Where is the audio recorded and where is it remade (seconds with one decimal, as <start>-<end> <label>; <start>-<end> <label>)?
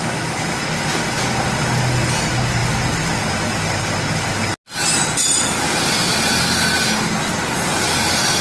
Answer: 0.0-8.4 recorded